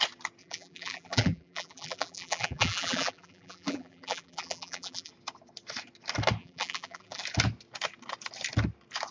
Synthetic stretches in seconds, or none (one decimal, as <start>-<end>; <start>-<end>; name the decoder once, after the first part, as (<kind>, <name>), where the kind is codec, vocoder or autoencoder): 0.4-5.1 (vocoder, BigVGAN v2); 6.4-7.2